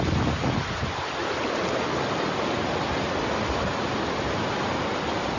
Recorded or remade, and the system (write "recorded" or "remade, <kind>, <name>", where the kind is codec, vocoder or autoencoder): recorded